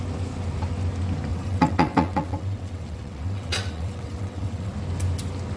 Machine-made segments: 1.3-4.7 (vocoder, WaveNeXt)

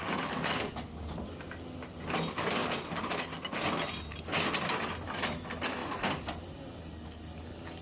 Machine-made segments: none

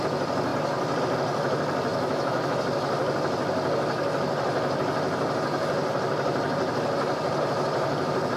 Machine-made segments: 1.9-2.6 (autoencoder, DAC-VAE)